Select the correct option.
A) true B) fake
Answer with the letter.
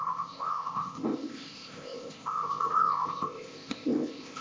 B